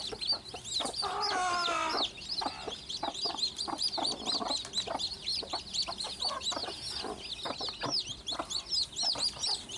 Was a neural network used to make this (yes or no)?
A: no